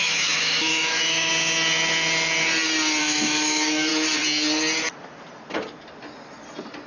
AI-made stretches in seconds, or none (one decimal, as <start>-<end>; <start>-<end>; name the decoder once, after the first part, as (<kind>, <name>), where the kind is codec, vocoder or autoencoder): 0.0-1.3 (autoencoder, DAC-VAE); 3.0-3.9